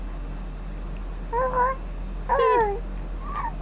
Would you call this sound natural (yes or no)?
yes